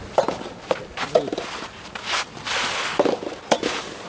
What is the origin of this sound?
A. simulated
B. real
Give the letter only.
B